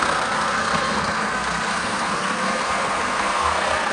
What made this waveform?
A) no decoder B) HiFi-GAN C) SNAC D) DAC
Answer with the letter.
C